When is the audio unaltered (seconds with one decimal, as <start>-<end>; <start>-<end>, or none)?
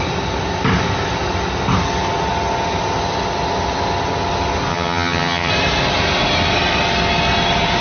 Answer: 0.0-4.7; 5.5-7.8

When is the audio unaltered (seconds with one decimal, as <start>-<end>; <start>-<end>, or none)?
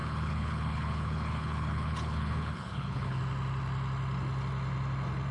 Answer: 3.2-5.3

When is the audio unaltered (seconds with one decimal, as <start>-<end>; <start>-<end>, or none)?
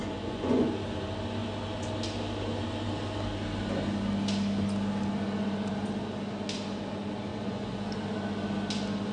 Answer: 0.7-7.3; 7.9-9.1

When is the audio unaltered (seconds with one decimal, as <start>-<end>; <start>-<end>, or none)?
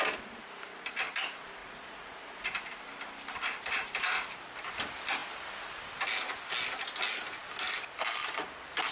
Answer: 0.0-1.6; 2.8-8.9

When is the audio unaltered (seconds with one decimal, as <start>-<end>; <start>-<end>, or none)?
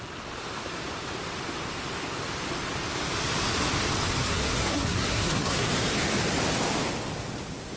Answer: 0.0-4.2; 5.7-7.8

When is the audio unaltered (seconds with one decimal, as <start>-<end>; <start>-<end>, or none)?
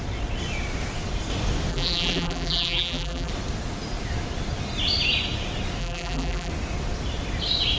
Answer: 0.0-1.7; 3.3-5.8; 6.5-7.8